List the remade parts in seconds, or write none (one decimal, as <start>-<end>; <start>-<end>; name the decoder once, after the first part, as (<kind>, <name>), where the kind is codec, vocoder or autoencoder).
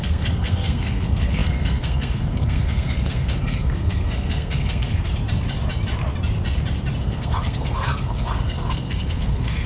0.0-5.1 (codec, SNAC); 7.0-9.7